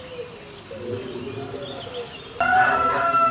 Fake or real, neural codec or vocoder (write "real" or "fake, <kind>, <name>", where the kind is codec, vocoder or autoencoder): real